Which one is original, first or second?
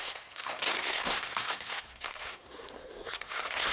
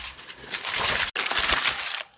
second